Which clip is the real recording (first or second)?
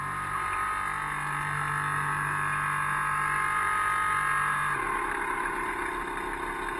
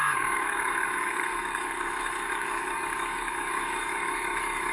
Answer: first